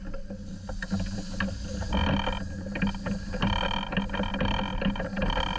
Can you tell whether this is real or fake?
real